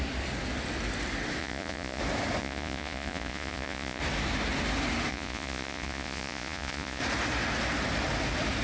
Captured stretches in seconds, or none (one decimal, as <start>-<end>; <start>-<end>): 0.0-1.4; 2.0-2.4; 4.0-5.1; 7.0-8.6